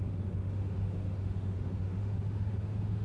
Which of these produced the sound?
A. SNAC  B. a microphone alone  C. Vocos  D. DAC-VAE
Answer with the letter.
D